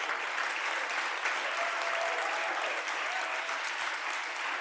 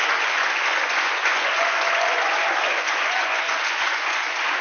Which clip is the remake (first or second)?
second